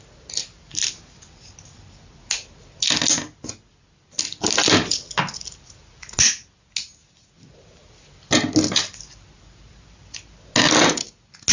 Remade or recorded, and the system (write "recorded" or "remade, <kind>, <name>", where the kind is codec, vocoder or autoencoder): recorded